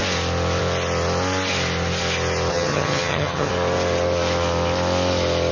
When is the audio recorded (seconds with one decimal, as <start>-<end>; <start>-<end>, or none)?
0.0-2.5; 3.5-5.5